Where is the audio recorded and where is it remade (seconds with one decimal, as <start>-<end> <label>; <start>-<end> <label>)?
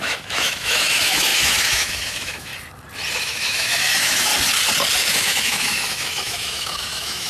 0.0-2.5 remade; 2.5-3.2 recorded; 3.2-4.3 remade; 4.3-5.0 recorded; 5.0-7.3 remade